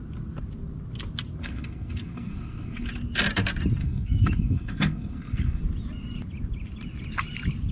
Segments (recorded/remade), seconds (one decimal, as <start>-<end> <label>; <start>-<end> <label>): 0.0-1.4 recorded; 1.4-2.9 remade; 2.9-3.8 recorded; 3.8-5.6 remade; 5.6-7.7 recorded